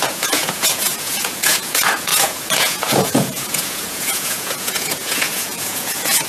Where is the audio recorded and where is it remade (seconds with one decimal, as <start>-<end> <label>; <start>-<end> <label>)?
0.0-6.3 remade